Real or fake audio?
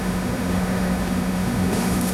fake